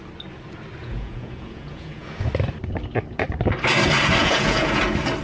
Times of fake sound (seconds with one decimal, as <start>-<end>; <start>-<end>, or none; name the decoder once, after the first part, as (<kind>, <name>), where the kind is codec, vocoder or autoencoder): 0.8-2.3 (vocoder, Vocos); 4.2-4.8